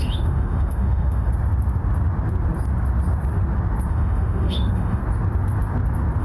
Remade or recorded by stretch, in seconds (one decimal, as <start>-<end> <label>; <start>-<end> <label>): 0.0-1.3 remade; 1.3-3.9 recorded; 3.9-5.0 remade; 5.0-6.2 recorded